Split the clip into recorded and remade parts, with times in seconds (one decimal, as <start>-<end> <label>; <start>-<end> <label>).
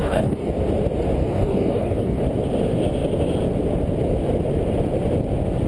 0.0-0.5 remade; 0.5-1.2 recorded; 1.2-2.2 remade; 2.2-5.7 recorded